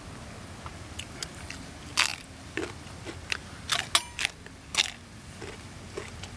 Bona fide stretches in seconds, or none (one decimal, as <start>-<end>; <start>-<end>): 0.0-2.1; 3.1-6.4